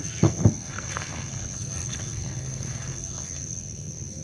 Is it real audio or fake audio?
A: fake